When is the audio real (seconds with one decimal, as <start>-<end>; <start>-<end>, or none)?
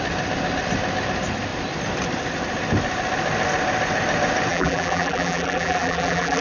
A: 0.0-4.5